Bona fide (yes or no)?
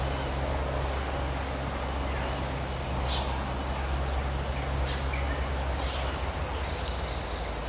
yes